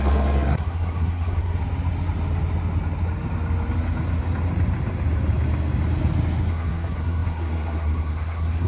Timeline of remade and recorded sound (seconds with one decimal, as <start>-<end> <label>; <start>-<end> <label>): 0.0-1.6 remade; 1.6-6.5 recorded; 6.5-8.7 remade